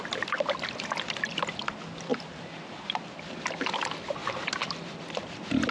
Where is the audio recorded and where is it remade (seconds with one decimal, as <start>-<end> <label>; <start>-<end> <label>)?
0.0-2.1 recorded; 2.1-3.1 remade; 3.1-4.2 recorded; 4.2-5.0 remade; 5.0-5.7 recorded